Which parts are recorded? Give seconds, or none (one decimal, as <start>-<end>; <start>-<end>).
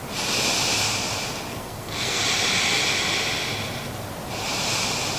0.0-1.5; 2.2-5.2